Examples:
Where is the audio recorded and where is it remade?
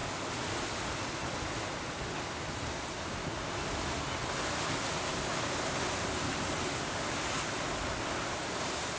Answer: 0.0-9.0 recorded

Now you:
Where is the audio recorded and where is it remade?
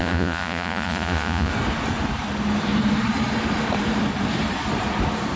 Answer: 0.0-1.5 remade; 1.5-5.4 recorded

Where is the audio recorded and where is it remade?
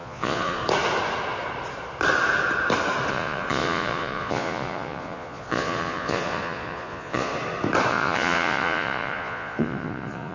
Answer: 0.0-0.6 remade; 0.6-3.1 recorded; 3.1-7.3 remade; 7.3-7.9 recorded; 7.9-10.3 remade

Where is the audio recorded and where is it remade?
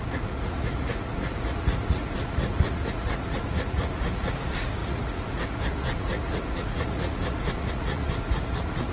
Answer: 0.0-8.9 remade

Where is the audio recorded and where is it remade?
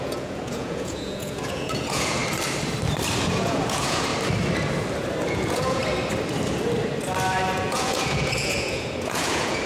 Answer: 0.0-2.2 remade; 2.2-3.2 recorded; 3.2-4.1 remade; 4.1-5.3 recorded; 5.3-5.8 remade; 5.8-7.5 recorded; 7.5-9.7 remade